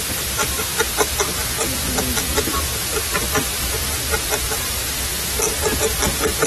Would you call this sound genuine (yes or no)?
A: yes